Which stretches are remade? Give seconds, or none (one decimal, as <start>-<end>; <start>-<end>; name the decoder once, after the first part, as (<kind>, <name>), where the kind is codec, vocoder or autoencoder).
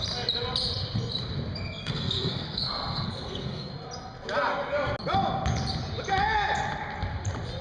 1.8-3.7 (codec, SNAC)